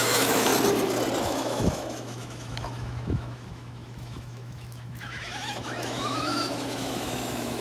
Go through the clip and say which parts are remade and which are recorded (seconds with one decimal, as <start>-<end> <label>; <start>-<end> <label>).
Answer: 0.0-0.5 remade; 0.5-1.2 recorded; 1.2-7.6 remade